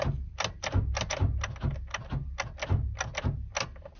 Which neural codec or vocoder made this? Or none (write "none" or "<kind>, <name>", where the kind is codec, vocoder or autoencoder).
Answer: none